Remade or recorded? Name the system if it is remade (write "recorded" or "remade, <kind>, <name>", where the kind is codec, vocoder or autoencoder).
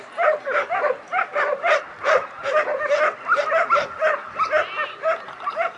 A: recorded